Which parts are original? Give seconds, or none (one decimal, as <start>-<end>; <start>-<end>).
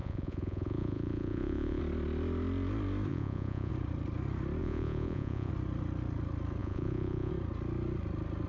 1.8-3.1; 3.7-4.6; 5.5-6.6; 7.3-8.5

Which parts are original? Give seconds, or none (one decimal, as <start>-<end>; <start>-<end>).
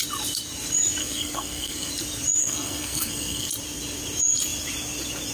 0.0-1.0; 1.9-2.4; 3.5-5.3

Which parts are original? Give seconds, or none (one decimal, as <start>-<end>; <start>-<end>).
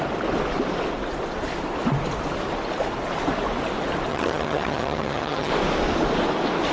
0.0-4.1; 5.5-6.7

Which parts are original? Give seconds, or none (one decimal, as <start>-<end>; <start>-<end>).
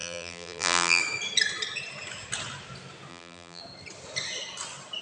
1.0-3.1; 3.6-5.0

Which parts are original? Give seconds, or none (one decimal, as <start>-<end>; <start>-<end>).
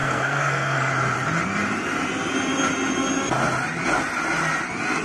0.9-5.0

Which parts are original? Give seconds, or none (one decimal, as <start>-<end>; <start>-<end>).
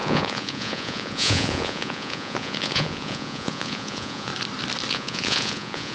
4.3-4.9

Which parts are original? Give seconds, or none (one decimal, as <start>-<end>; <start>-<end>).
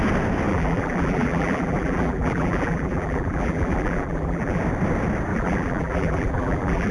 0.0-0.5; 4.6-5.3